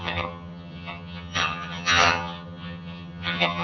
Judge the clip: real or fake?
fake